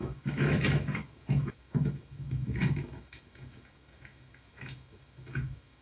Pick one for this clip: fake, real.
fake